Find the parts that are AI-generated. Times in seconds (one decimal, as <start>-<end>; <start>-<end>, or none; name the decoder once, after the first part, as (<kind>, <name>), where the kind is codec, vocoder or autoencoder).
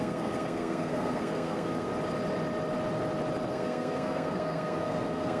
0.0-1.9 (codec, SNAC); 3.5-5.4